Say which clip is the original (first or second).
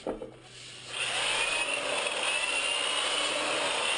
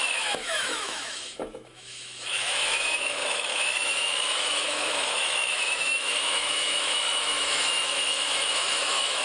first